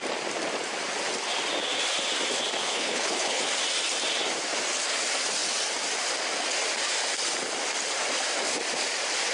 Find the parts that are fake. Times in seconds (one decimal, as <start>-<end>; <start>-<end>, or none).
2.6-3.4